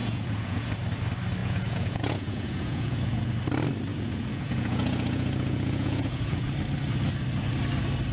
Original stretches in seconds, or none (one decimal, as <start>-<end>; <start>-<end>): 0.7-1.4; 3.3-3.9; 6.5-8.1